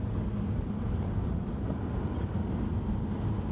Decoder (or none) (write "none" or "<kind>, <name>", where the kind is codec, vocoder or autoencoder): none